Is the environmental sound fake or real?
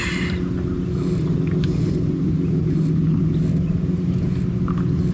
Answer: real